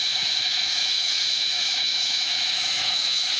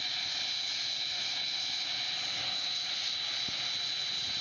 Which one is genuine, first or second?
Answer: second